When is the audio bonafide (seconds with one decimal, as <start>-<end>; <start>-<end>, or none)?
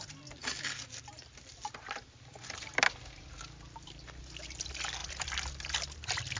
0.0-6.4